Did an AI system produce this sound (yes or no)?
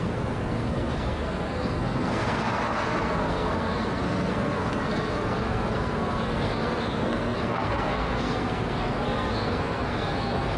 yes